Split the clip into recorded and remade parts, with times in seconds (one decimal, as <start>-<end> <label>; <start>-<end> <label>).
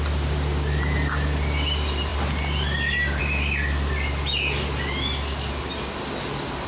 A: 0.0-6.7 recorded